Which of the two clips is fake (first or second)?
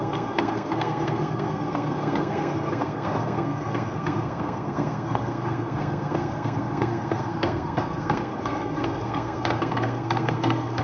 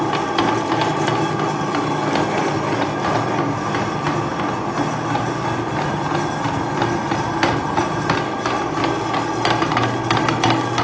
first